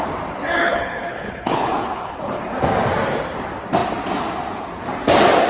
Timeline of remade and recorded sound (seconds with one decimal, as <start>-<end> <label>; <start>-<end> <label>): 0.0-0.6 recorded; 0.6-2.4 remade; 2.4-5.5 recorded